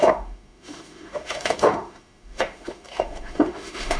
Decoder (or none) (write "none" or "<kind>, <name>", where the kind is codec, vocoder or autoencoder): autoencoder, DAC-VAE